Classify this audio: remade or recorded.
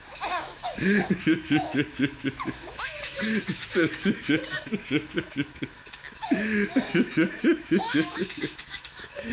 remade